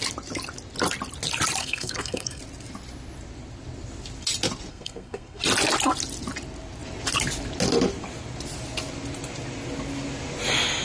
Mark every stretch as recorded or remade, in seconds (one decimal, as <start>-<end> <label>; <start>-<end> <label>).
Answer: 0.0-1.6 recorded; 1.6-2.4 remade; 2.4-4.7 recorded; 4.7-5.4 remade; 5.4-10.8 recorded